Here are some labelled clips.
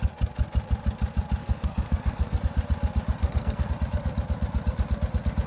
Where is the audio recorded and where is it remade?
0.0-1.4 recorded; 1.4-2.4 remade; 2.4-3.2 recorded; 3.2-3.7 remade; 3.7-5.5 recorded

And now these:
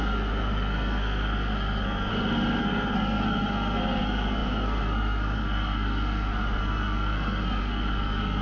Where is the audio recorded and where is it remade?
0.0-2.1 remade; 2.1-2.6 recorded; 2.6-8.4 remade

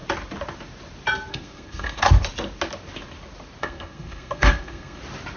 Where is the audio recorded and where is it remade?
0.0-1.3 recorded; 1.3-2.0 remade; 2.0-3.6 recorded; 3.6-5.0 remade; 5.0-5.4 recorded

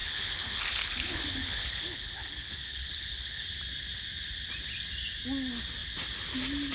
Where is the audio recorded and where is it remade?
0.0-3.5 remade; 3.5-6.7 recorded

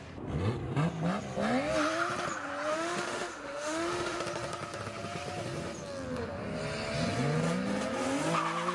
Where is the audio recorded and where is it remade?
0.0-2.7 recorded; 2.7-4.2 remade; 4.2-8.7 recorded

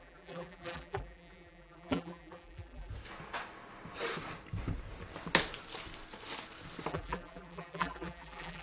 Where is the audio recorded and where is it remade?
0.0-2.9 remade; 2.9-6.9 recorded; 6.9-8.6 remade

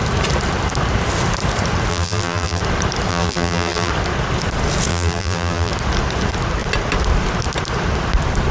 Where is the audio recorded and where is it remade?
0.0-1.9 recorded; 1.9-2.6 remade; 2.6-3.1 recorded; 3.1-3.9 remade; 3.9-4.9 recorded; 4.9-5.7 remade; 5.7-8.5 recorded

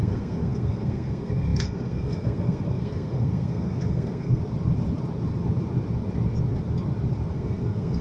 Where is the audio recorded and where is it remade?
0.0-4.4 remade; 4.4-7.3 recorded; 7.3-8.0 remade